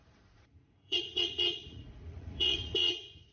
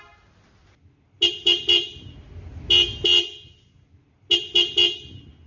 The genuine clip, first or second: second